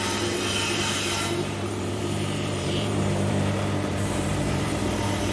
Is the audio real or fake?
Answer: fake